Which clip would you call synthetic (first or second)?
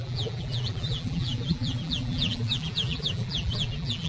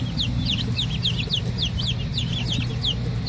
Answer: first